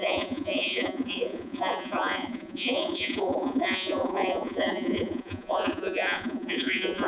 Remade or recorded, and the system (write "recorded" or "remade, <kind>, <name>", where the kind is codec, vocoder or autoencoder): remade, vocoder, Vocos